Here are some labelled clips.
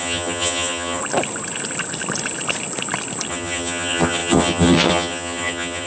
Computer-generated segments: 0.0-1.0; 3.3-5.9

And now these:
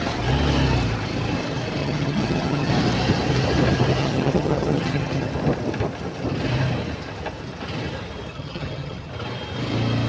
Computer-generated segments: 1.8-2.7; 4.0-5.3; 8.3-9.1